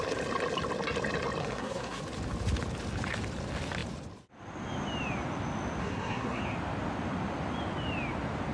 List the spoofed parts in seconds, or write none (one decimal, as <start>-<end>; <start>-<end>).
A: 1.4-2.0; 5.8-6.4